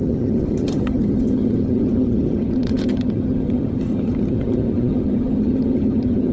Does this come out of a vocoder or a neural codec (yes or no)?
yes